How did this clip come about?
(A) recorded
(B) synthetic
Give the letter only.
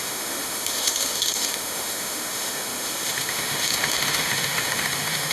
B